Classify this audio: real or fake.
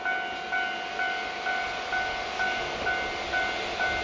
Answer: real